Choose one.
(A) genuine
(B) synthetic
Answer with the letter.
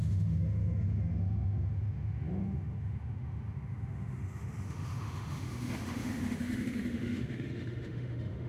B